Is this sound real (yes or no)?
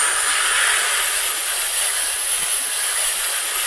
yes